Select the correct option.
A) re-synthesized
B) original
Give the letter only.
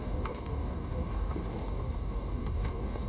A